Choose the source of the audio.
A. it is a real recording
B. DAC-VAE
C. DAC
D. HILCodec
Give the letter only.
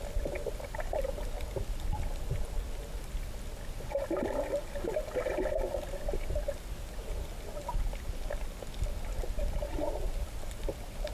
A